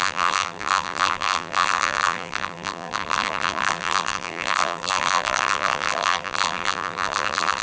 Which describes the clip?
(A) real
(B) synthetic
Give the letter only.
B